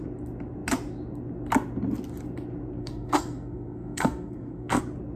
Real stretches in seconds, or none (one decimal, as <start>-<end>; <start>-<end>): 0.0-2.8; 4.8-5.2